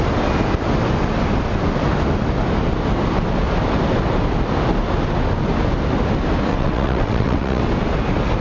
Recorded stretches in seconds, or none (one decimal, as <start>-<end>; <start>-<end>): 0.0-6.5; 7.6-8.4